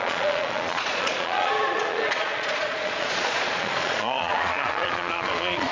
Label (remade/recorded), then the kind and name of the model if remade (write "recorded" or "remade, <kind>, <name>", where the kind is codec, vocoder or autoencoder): remade, vocoder, Vocos